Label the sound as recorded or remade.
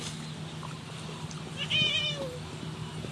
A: recorded